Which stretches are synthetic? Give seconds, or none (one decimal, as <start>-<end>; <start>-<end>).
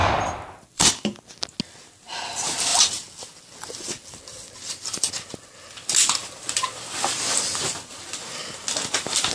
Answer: 0.0-0.9; 2.7-5.1